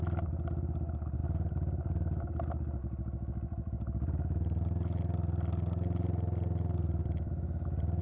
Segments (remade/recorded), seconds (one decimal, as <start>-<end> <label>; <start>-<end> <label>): 0.0-8.0 recorded